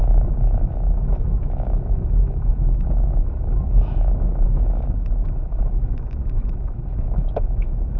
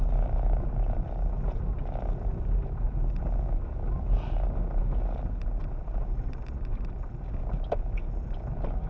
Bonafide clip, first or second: second